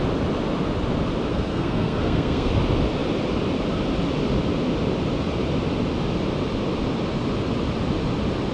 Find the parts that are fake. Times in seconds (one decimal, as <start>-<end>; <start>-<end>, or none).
1.3-2.5